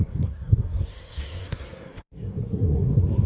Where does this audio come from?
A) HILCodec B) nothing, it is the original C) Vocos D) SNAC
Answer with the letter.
D